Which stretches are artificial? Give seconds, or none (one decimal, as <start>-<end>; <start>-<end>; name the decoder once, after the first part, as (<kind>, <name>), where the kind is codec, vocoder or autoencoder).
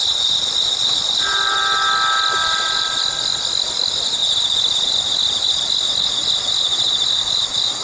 none